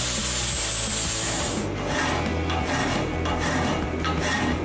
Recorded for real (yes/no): yes